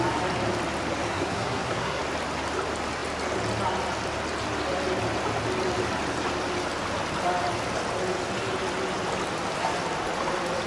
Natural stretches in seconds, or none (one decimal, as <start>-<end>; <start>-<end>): 0.0-1.1; 2.0-10.7